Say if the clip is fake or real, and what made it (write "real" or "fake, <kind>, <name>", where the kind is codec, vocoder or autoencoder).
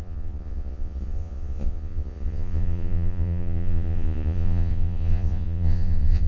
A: fake, vocoder, Vocos